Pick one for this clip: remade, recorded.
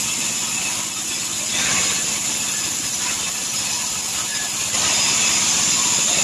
recorded